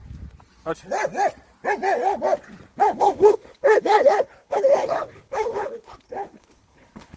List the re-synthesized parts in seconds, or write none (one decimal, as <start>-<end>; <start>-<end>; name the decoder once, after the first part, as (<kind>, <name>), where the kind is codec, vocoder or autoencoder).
2.7-7.2 (codec, HILCodec)